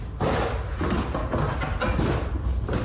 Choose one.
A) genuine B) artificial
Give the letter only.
A